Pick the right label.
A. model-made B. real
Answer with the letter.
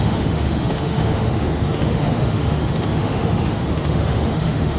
A